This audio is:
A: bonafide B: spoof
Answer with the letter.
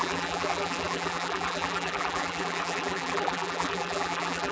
B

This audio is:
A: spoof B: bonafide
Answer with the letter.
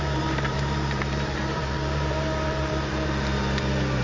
A